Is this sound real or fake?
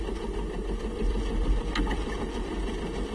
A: real